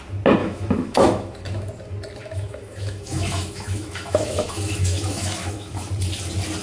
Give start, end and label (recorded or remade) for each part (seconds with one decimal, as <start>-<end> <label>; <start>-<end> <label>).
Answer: 0.0-0.4 recorded; 0.4-1.7 remade; 1.7-2.2 recorded; 2.2-5.9 remade; 5.9-6.6 recorded